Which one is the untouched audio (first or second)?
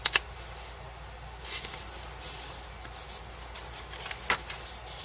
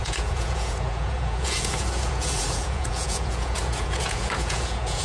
first